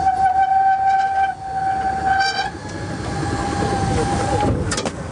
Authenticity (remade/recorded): recorded